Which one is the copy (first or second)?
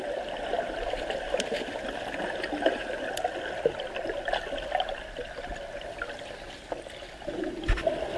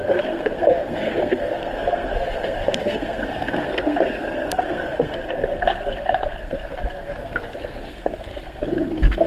second